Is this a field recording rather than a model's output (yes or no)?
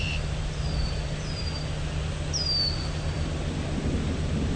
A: yes